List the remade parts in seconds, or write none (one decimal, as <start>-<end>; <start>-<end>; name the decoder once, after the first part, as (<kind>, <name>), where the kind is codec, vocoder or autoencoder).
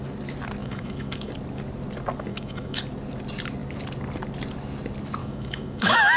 0.6-1.3 (autoencoder, DAC-VAE); 2.3-2.8; 5.2-6.2